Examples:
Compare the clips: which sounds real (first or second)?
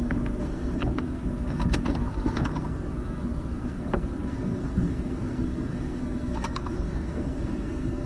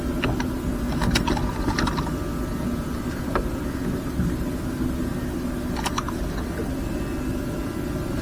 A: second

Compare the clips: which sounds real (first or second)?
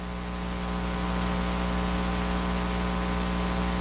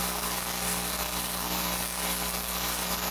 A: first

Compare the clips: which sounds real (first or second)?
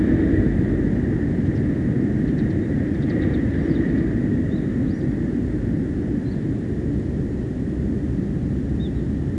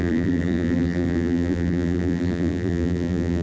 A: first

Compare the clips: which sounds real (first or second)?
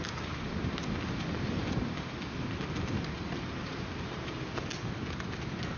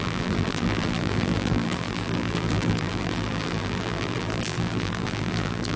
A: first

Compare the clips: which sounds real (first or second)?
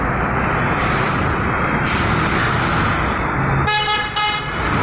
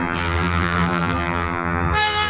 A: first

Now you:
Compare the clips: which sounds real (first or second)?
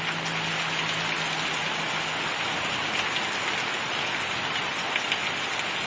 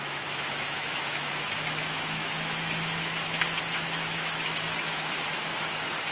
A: first